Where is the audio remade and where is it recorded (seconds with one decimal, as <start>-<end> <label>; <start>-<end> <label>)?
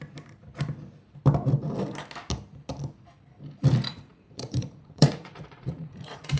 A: 0.0-3.9 recorded; 3.9-6.4 remade